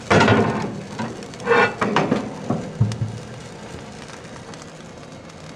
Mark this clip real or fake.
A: real